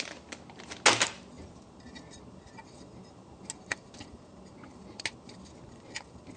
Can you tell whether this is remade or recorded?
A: recorded